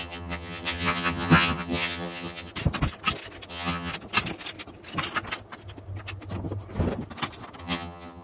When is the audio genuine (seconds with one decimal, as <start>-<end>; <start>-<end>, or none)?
2.5-3.5; 3.9-7.6